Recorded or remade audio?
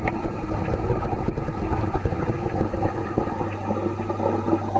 recorded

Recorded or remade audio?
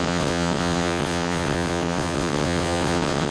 remade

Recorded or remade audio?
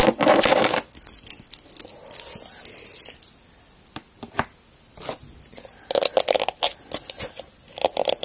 recorded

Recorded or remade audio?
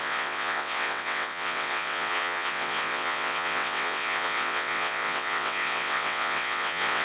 remade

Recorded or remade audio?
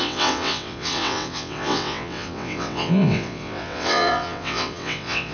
remade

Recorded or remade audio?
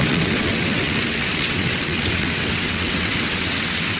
remade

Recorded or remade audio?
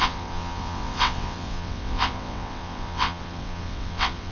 remade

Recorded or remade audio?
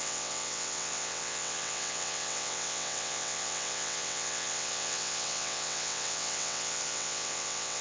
remade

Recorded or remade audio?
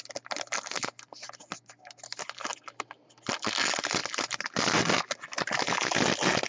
recorded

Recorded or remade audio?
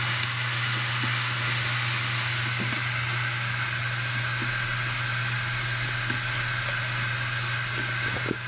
recorded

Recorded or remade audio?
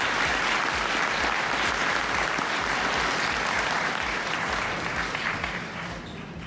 recorded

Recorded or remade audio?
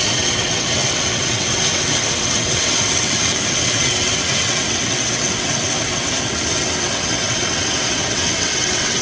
remade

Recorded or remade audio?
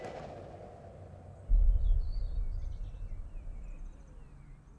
recorded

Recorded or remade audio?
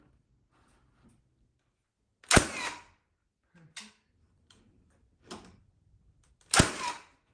recorded